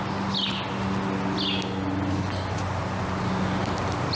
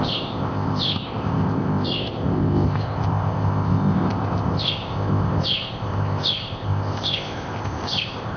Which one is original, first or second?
first